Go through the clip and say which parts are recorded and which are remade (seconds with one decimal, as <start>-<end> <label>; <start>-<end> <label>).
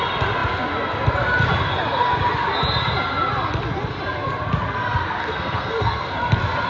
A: 0.0-5.2 recorded; 5.2-6.3 remade; 6.3-6.7 recorded